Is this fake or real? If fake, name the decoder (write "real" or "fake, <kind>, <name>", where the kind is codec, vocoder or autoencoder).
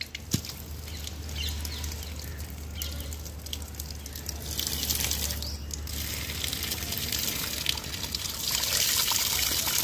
real